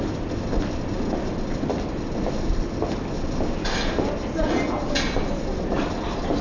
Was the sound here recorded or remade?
recorded